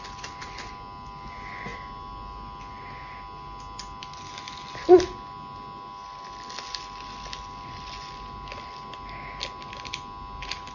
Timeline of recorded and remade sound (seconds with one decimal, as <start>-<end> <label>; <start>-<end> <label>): 0.0-10.7 recorded